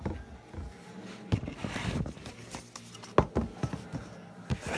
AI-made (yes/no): no